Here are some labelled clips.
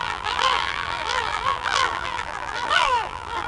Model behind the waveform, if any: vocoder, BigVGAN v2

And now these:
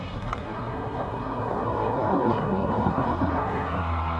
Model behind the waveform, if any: codec, SNAC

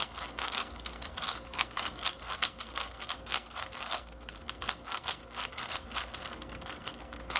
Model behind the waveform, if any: codec, SNAC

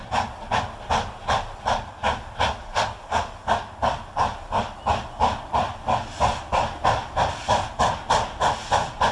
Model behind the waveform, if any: none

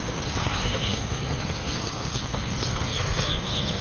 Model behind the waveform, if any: codec, SNAC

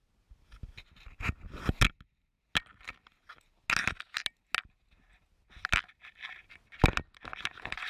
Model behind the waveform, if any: none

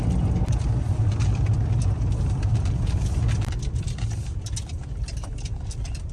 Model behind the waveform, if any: vocoder, BigVGAN v2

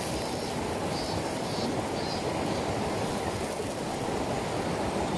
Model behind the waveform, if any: none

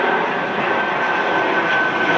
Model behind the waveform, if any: none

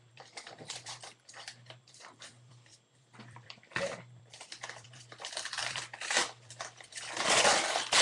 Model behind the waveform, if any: vocoder, BigVGAN v2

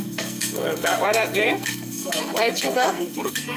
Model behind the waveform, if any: codec, SNAC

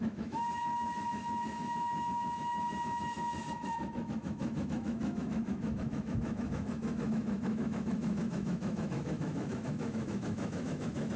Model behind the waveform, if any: autoencoder, DAC-VAE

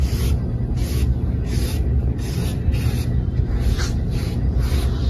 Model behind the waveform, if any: none